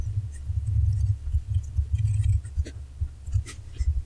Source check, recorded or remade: recorded